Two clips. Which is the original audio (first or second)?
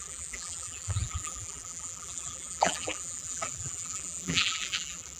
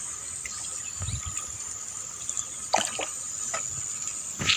second